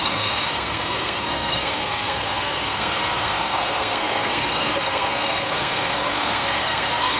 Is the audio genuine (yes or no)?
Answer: no